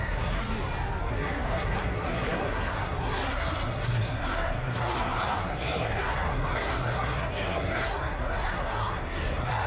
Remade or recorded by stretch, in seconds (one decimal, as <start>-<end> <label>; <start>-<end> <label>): 0.0-0.4 remade; 0.4-1.1 recorded; 1.1-9.7 remade